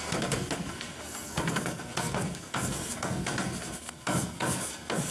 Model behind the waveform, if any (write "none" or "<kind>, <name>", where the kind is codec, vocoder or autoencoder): codec, SNAC